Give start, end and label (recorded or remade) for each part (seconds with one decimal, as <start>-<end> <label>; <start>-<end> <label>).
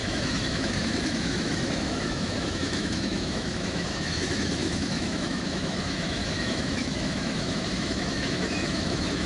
0.0-9.3 remade